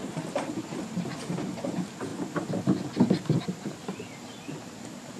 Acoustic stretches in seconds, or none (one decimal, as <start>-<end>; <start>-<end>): 0.0-5.2